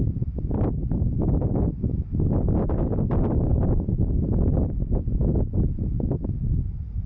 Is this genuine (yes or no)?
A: yes